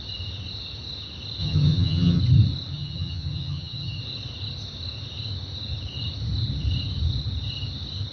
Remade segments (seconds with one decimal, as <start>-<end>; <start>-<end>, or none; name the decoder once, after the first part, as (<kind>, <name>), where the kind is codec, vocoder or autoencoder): 1.4-2.2 (vocoder, HiFi-GAN); 2.7-4.0